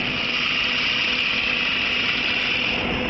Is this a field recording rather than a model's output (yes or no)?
yes